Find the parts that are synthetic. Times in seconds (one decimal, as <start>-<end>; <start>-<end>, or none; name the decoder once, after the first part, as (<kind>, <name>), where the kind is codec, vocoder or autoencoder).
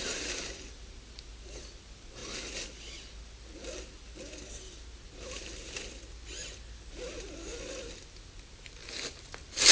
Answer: none